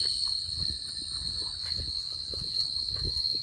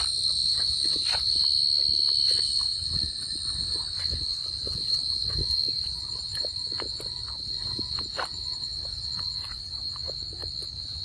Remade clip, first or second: first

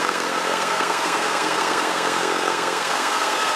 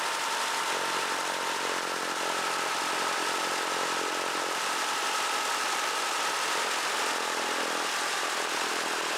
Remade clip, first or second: first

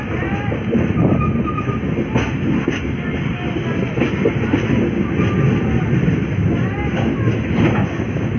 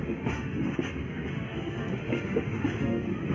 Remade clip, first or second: second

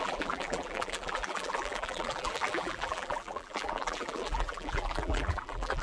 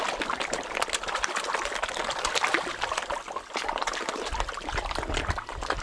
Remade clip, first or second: first